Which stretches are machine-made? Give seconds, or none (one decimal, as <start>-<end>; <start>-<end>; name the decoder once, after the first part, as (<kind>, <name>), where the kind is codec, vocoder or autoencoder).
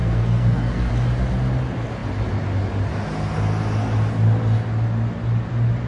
0.0-0.9 (codec, SNAC)